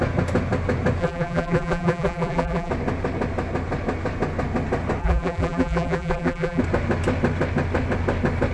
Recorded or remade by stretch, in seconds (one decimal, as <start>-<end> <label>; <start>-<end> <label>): 0.0-1.0 recorded; 1.0-2.7 remade; 2.7-5.0 recorded; 5.0-6.6 remade; 6.6-8.5 recorded